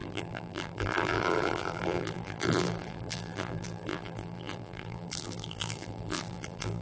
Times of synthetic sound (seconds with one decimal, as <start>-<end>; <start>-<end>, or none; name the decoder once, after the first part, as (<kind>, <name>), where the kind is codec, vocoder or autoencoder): 0.0-6.8 (vocoder, BigVGAN v2)